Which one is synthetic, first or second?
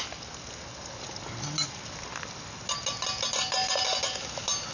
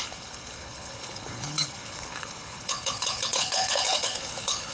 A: second